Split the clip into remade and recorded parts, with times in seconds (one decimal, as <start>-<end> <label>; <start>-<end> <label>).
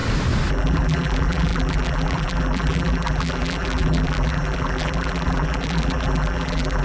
0.0-0.5 recorded; 0.5-6.8 remade